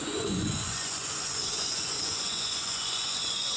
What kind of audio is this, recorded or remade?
remade